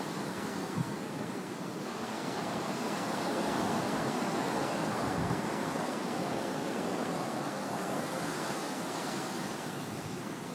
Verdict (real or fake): fake